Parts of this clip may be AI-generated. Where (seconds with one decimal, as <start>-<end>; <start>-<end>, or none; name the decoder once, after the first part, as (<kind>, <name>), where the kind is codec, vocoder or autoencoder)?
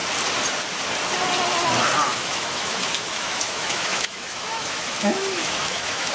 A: 2.1-6.1 (autoencoder, DAC-VAE)